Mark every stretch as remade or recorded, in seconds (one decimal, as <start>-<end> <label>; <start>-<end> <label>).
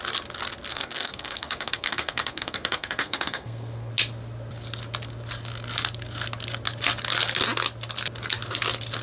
0.0-0.7 recorded; 0.7-3.9 remade; 3.9-9.0 recorded